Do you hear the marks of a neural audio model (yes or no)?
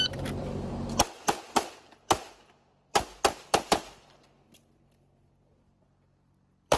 yes